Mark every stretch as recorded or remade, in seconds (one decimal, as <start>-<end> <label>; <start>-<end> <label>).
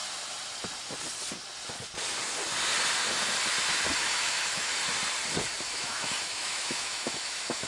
0.0-4.0 recorded; 4.0-4.7 remade; 4.7-5.7 recorded; 5.7-7.7 remade